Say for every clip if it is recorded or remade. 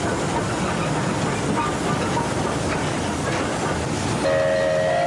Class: recorded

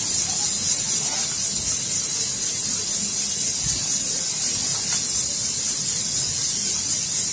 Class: recorded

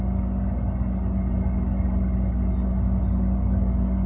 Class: recorded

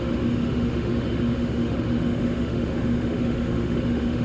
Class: remade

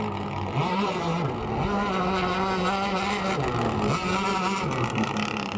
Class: recorded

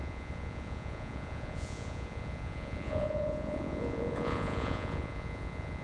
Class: remade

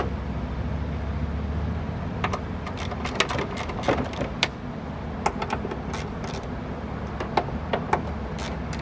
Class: recorded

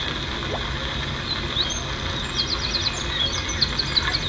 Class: recorded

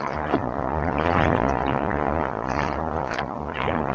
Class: remade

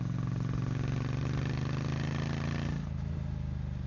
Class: recorded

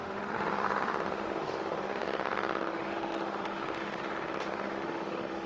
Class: remade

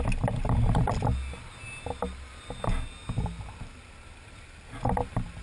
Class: recorded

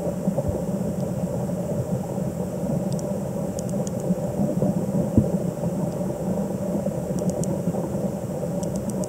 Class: recorded